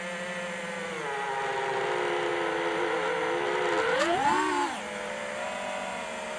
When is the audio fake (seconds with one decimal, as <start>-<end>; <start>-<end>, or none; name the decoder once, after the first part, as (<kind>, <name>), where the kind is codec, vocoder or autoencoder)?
none